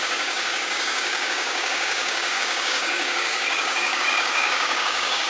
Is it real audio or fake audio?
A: fake